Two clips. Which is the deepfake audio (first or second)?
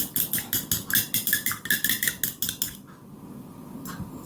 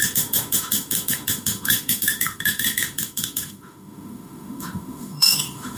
second